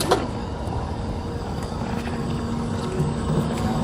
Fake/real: fake